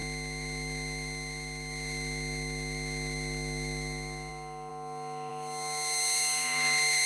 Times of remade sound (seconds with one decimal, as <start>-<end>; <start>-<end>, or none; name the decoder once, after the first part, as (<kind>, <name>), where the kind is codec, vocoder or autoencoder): none